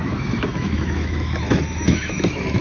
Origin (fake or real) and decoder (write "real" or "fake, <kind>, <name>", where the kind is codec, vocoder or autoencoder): fake, autoencoder, DAC-VAE